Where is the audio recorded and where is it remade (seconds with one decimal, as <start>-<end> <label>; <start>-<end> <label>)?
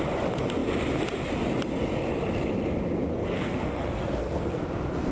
0.0-3.1 recorded; 3.1-4.6 remade; 4.6-5.1 recorded